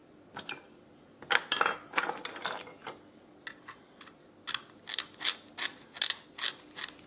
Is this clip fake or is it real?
real